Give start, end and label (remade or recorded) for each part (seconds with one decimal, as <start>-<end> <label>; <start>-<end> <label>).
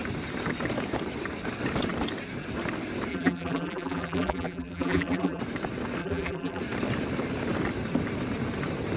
0.0-3.1 recorded; 3.1-5.4 remade; 5.4-6.0 recorded; 6.0-6.6 remade; 6.6-9.0 recorded